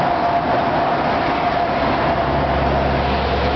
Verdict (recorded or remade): recorded